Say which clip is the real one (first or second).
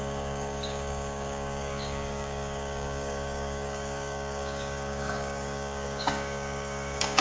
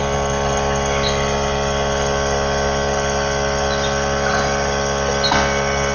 second